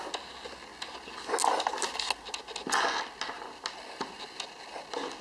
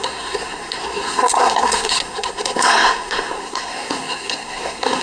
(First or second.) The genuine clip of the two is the first